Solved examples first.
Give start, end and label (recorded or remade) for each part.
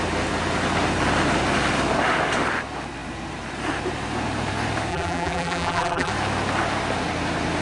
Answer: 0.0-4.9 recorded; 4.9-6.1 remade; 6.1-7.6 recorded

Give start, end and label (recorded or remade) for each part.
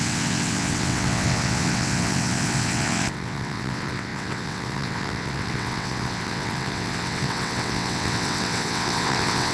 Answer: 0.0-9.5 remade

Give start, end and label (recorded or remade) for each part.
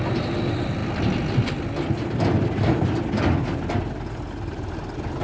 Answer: 0.0-5.2 recorded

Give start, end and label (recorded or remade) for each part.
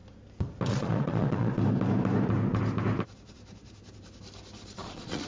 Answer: 0.0-0.7 recorded; 0.7-1.5 remade; 1.5-4.7 recorded; 4.7-5.3 remade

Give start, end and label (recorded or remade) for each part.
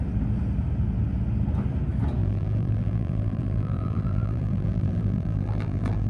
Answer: 0.0-2.2 recorded; 2.2-6.1 remade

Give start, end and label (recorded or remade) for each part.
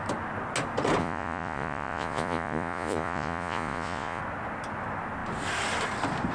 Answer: 0.0-1.0 recorded; 1.0-4.2 remade; 4.2-6.3 recorded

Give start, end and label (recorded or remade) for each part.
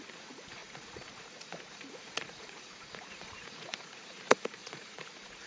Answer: 0.0-5.5 remade